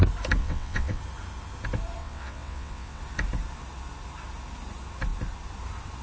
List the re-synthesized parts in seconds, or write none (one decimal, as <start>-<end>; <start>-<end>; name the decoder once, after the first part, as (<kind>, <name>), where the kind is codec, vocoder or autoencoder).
0.4-1.0 (vocoder, WaveNeXt); 2.0-3.0